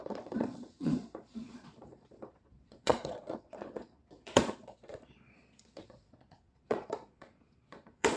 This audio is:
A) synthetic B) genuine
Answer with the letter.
A